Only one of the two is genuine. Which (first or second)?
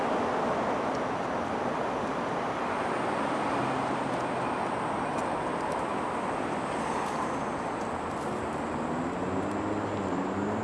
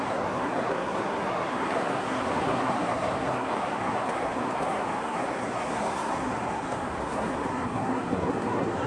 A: first